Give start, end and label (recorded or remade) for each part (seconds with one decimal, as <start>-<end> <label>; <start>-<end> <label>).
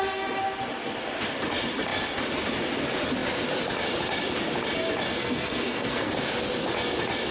0.0-5.2 recorded; 5.2-6.1 remade; 6.1-7.3 recorded